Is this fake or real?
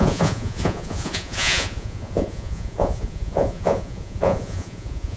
fake